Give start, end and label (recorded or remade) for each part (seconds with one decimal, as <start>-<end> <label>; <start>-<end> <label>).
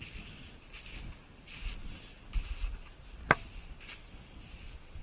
0.0-5.0 recorded